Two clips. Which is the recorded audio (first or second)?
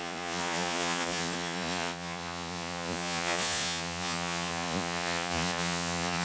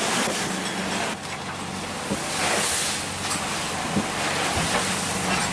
second